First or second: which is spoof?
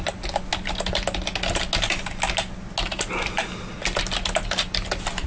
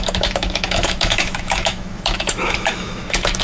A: second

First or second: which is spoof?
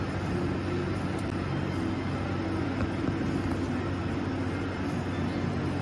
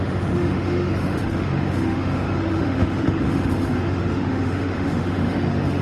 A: second